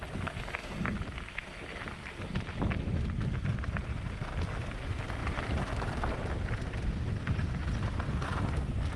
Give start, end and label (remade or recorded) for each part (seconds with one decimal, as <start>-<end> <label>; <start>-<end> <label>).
0.0-5.2 recorded; 5.2-7.5 remade; 7.5-9.0 recorded